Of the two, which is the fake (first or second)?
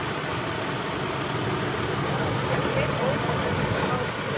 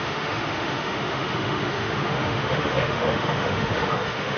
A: second